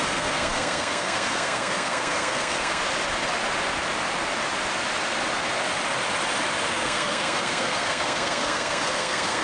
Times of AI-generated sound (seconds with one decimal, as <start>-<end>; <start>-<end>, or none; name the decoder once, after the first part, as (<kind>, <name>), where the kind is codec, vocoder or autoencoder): 0.0-2.8 (codec, SNAC); 6.7-9.4